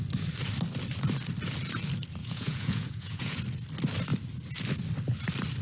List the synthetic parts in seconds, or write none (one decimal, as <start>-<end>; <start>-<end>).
2.2-3.4